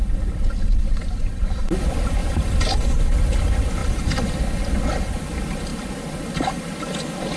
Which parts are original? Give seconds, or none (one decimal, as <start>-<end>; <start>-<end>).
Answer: 0.0-1.3; 1.8-2.2; 2.8-3.8; 4.4-7.4